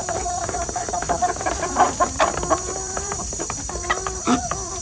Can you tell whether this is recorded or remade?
remade